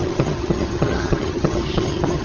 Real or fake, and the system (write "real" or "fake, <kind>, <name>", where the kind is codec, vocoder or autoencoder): fake, vocoder, HiFi-GAN